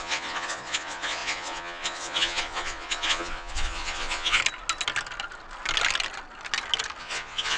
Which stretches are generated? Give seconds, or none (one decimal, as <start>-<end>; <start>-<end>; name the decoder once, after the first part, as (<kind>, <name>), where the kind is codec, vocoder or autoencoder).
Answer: 0.0-4.4 (vocoder, Vocos); 7.0-7.6